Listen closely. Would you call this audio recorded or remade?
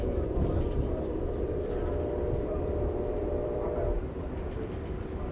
remade